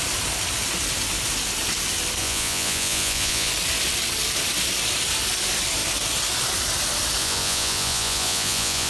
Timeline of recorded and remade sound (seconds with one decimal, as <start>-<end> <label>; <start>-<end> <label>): 0.0-2.2 recorded; 2.2-3.5 remade; 3.5-7.2 recorded; 7.2-8.9 remade